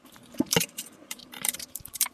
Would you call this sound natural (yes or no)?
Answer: no